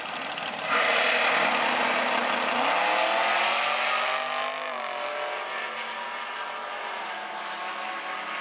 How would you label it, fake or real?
real